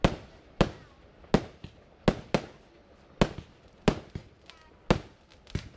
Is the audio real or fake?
real